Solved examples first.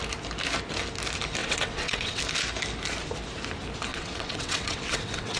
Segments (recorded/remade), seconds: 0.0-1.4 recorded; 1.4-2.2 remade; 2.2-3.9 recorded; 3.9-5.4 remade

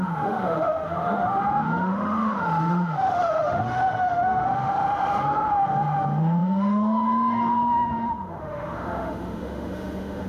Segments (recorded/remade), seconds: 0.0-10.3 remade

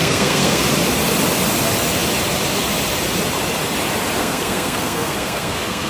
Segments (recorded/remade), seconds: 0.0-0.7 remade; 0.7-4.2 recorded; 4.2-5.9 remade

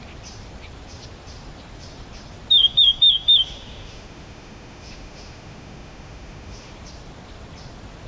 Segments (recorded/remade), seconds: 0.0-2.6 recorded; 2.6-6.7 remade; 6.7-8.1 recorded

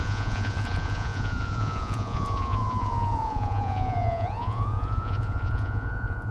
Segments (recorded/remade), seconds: 0.0-6.3 remade

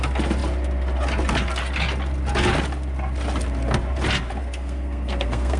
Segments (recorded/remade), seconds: 0.0-4.4 recorded; 4.4-5.6 remade

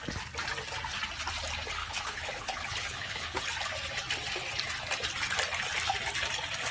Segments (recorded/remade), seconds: 0.0-1.8 recorded; 1.8-3.4 remade; 3.4-6.7 recorded